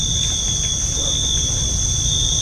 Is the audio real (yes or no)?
yes